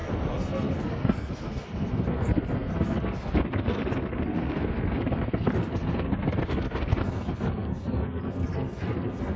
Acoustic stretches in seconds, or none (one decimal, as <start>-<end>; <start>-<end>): none